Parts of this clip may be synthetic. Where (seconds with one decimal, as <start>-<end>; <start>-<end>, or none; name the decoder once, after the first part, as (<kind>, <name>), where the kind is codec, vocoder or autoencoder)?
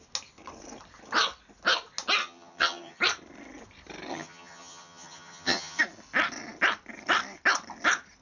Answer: 2.2-3.0 (vocoder, HiFi-GAN); 4.1-5.8